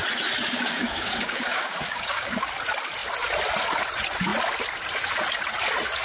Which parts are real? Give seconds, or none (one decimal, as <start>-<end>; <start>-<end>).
0.0-0.4; 2.5-6.0